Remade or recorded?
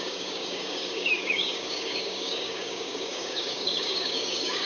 remade